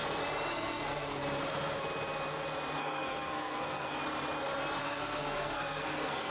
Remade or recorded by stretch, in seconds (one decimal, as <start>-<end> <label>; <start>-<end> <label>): 0.0-0.5 recorded; 0.5-1.2 remade; 1.2-2.8 recorded; 2.8-4.0 remade; 4.0-4.8 recorded; 4.8-6.3 remade